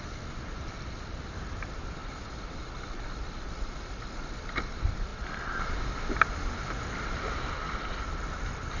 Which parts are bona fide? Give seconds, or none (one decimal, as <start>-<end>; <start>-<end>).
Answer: 0.0-8.8

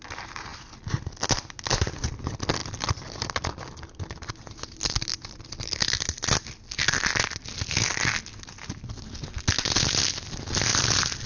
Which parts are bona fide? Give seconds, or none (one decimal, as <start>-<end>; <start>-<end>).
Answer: 0.0-2.6; 3.7-10.7